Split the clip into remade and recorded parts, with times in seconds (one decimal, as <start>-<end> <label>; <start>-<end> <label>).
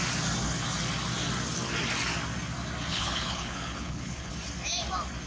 0.0-2.9 recorded; 2.9-4.3 remade; 4.3-5.3 recorded